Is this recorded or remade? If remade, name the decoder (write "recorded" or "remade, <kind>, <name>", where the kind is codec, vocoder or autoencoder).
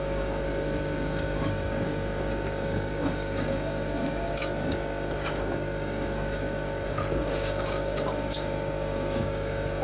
remade, codec, DAC